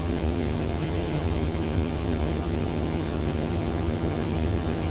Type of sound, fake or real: fake